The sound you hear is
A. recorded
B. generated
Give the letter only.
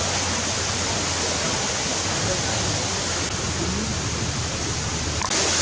A